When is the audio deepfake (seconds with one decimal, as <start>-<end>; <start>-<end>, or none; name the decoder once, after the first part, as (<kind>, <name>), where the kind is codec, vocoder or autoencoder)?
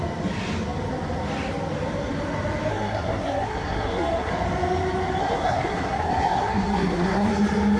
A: 2.7-4.3 (codec, SNAC); 5.2-7.3